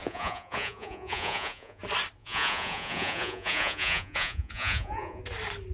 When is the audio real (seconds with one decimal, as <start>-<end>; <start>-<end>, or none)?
1.8-2.2; 5.2-5.7